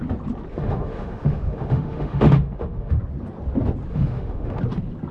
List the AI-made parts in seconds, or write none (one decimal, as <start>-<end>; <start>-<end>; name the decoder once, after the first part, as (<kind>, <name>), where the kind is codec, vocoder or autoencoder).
0.5-3.0 (autoencoder, DAC-VAE); 3.9-4.6